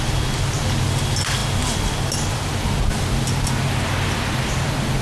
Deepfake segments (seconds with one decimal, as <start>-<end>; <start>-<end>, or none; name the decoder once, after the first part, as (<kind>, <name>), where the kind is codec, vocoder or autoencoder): none